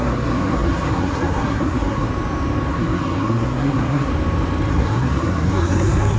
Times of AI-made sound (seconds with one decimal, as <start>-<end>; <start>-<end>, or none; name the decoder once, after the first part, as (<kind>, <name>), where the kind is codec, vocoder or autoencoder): 0.0-2.1 (codec, SNAC); 2.7-4.1; 4.7-6.2